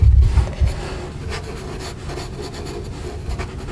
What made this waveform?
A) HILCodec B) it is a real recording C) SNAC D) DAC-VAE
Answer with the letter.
B